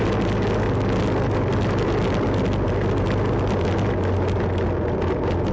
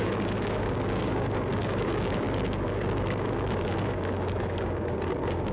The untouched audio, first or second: first